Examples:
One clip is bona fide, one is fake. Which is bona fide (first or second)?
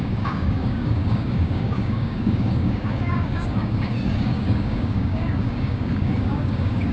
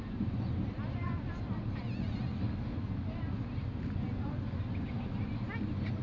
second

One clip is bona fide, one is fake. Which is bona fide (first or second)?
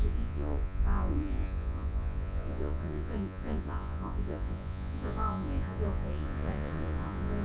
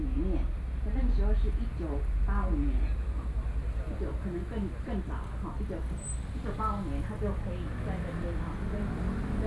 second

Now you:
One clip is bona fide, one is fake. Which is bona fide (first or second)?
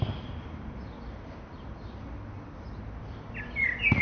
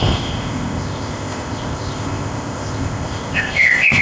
first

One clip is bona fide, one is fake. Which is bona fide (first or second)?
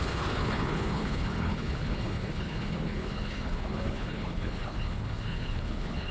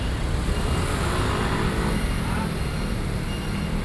second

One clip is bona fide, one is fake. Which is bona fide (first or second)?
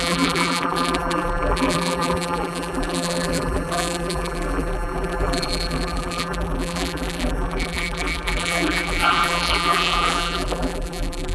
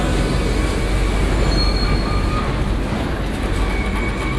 second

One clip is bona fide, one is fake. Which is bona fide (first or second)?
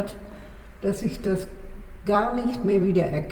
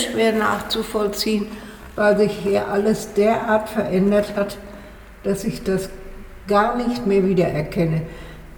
second